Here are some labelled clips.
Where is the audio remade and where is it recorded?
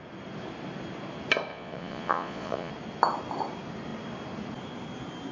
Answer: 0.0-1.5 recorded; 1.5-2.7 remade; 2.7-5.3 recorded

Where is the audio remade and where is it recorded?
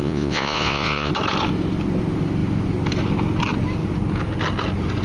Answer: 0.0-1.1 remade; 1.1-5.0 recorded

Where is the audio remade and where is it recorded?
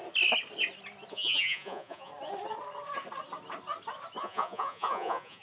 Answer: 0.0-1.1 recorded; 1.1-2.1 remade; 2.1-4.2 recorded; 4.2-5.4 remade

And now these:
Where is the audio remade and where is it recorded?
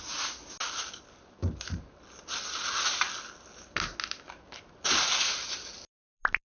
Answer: 0.0-6.6 recorded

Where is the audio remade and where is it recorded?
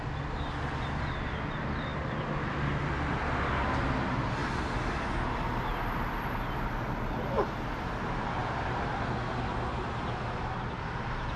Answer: 0.0-11.4 recorded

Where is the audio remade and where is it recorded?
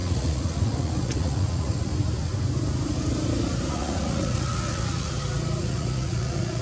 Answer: 0.0-1.9 remade; 1.9-3.7 recorded; 3.7-5.1 remade; 5.1-5.6 recorded; 5.6-6.6 remade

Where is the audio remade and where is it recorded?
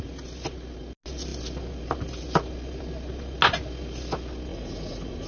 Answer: 0.0-4.5 recorded; 4.5-5.3 remade